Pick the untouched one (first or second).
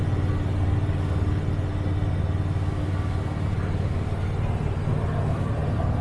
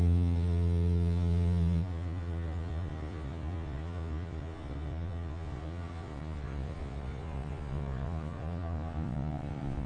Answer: first